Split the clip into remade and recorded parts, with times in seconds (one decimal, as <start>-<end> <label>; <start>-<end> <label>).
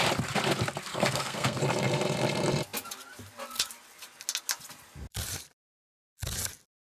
0.0-0.9 recorded; 0.9-1.6 remade; 1.6-6.8 recorded